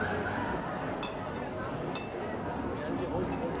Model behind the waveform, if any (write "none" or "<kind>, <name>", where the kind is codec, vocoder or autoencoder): none